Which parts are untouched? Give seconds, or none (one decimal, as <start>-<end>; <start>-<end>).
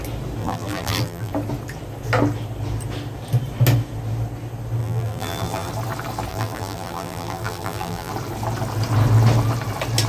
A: 0.0-0.4; 1.3-4.8; 5.7-6.3; 8.1-10.1